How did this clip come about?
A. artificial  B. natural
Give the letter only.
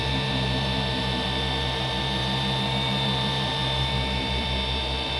A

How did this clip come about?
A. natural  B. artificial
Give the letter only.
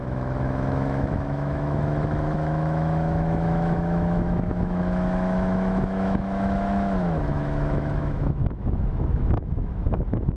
B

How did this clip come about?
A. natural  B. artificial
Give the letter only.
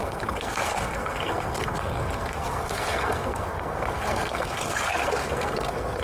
B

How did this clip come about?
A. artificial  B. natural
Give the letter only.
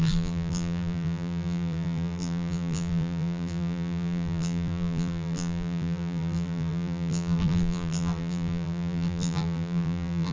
A